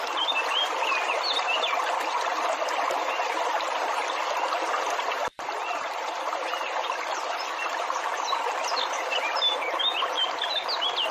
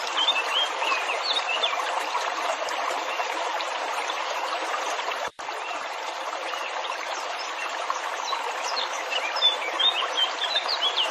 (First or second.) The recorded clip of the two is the first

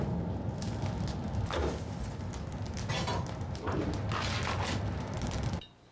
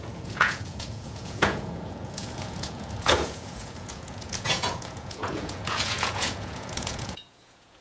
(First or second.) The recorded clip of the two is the first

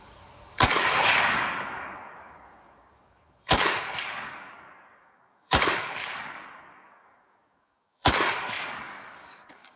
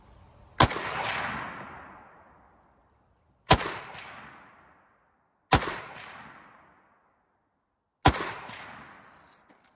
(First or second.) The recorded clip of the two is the second